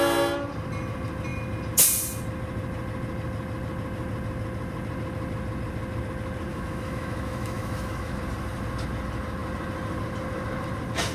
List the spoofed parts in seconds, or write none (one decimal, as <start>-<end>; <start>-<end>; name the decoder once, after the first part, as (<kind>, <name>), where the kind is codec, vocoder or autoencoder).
6.5-8.2 (autoencoder, DAC-VAE)